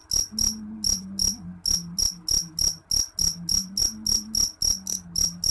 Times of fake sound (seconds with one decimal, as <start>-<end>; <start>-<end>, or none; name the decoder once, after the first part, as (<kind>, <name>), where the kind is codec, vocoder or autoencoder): none